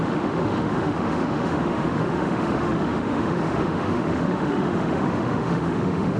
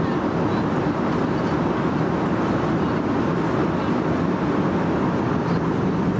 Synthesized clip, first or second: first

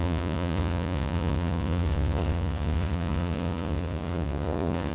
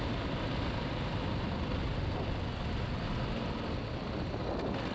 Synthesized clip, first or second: first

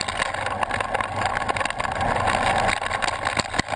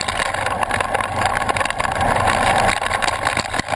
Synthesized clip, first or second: second